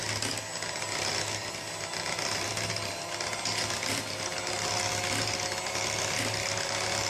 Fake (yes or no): no